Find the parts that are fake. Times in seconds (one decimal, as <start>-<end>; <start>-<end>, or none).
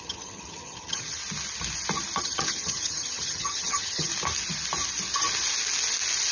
0.0-1.2; 2.2-4.1